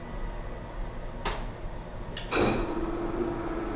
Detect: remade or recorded recorded